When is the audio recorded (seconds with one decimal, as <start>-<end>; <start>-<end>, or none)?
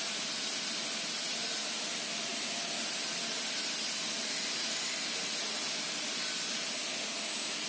0.0-7.7